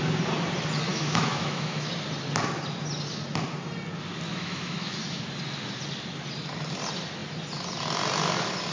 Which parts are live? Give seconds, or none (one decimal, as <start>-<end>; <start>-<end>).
0.0-0.9; 1.9-4.3; 5.2-8.7